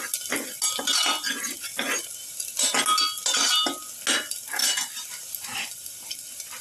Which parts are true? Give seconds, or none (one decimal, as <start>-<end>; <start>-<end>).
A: 0.0-6.6